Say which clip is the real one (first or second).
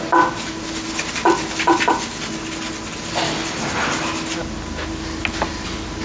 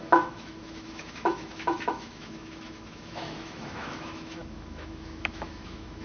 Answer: first